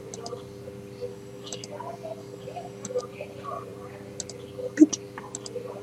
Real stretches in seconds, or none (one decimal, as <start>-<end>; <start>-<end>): 0.0-1.1; 1.6-2.2; 3.0-5.8